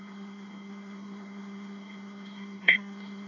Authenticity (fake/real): fake